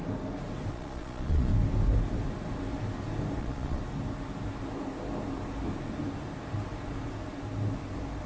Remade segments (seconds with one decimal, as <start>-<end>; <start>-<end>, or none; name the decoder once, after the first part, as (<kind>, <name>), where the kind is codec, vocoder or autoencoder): 0.7-1.5 (vocoder, Vocos); 3.4-3.8